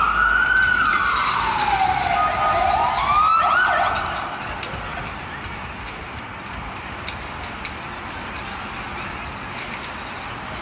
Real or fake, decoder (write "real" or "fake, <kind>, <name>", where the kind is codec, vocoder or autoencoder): real